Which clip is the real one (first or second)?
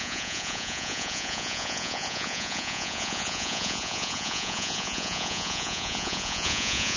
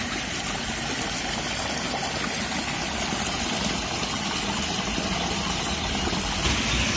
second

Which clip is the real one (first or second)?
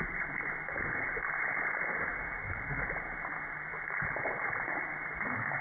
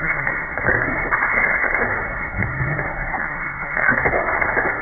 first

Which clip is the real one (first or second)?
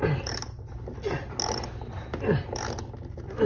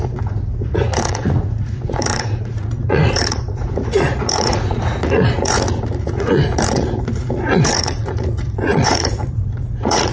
first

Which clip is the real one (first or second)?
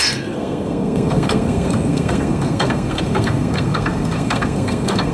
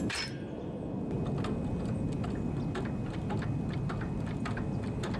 second